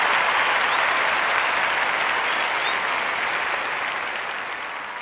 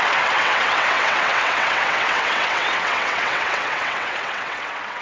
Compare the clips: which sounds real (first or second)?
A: first